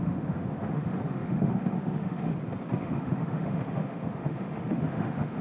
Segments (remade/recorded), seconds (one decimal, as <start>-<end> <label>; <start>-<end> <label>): 0.0-2.3 remade; 2.3-2.8 recorded; 2.8-5.4 remade